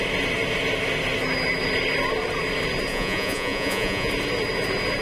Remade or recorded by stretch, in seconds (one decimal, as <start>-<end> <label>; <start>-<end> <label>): 0.0-2.9 recorded; 2.9-4.1 remade; 4.1-5.0 recorded